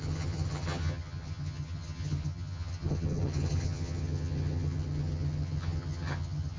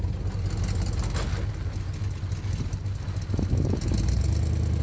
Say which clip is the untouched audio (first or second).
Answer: second